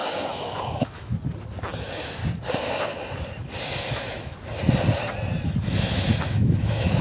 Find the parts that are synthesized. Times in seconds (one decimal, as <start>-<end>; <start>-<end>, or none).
0.0-1.1; 1.8-2.2; 3.9-4.3; 5.6-7.0

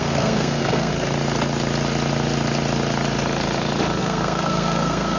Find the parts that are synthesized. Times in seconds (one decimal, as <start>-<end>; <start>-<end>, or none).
0.0-0.9; 4.0-5.2

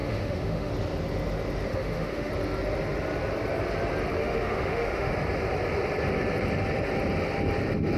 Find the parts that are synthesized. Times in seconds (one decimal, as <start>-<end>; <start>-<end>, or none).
0.0-0.7; 1.7-2.3; 4.2-5.1

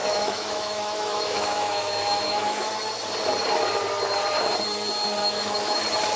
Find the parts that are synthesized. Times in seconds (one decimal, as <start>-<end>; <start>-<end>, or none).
0.0-2.7; 5.2-5.8

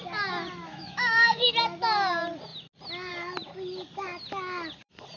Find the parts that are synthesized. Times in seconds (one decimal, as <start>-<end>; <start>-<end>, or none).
0.6-1.5

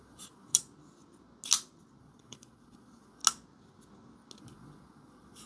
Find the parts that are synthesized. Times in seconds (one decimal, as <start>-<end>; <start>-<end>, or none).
0.0-0.5; 2.0-3.2; 4.4-5.5

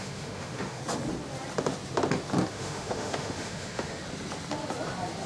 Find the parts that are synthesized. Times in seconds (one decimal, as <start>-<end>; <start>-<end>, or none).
0.0-0.8; 2.5-4.0

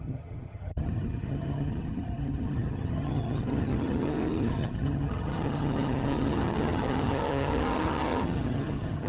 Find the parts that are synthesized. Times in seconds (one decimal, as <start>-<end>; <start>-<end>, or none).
0.0-9.1